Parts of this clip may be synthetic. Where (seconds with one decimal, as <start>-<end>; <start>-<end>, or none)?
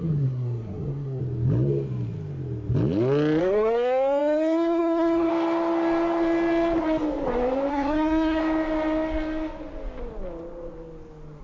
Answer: 0.0-1.2; 3.4-5.3; 7.7-8.4